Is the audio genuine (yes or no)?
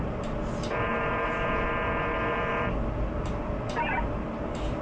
yes